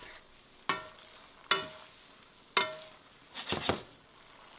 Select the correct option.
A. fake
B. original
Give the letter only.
B